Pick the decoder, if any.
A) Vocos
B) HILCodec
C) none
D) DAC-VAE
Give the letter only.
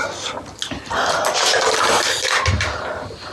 C